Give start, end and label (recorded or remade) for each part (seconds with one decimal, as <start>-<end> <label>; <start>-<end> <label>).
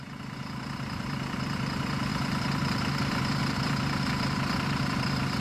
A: 0.0-5.4 recorded